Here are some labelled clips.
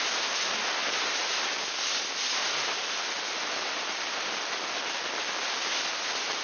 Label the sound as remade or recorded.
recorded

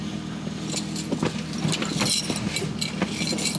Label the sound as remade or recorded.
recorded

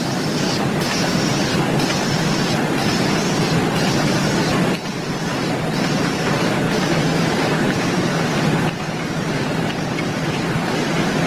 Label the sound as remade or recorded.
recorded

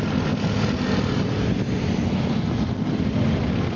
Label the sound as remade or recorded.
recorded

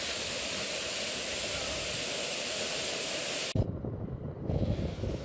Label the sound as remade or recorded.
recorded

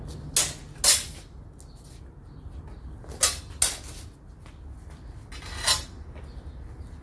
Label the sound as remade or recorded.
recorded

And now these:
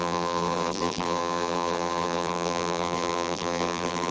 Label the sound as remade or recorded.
remade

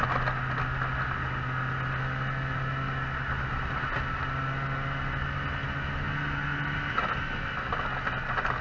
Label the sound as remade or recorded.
recorded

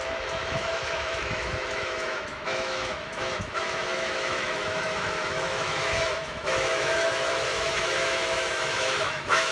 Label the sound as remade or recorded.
remade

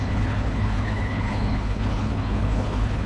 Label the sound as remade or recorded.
remade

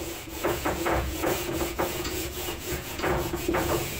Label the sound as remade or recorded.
remade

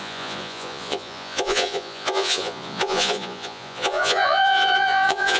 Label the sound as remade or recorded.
remade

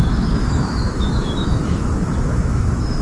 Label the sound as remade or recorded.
remade